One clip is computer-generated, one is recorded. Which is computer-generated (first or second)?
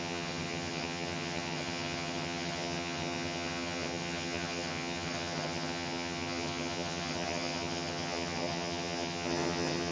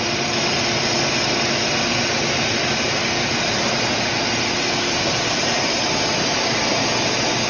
first